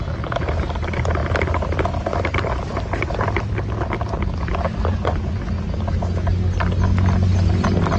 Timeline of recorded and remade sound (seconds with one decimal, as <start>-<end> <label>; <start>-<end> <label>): 0.0-4.9 recorded; 4.9-5.4 remade; 5.4-8.0 recorded